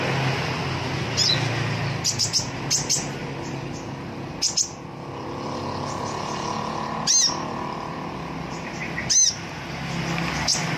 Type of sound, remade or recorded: recorded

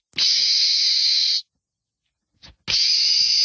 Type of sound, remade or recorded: recorded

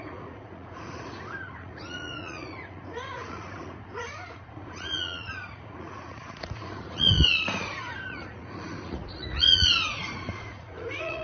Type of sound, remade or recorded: remade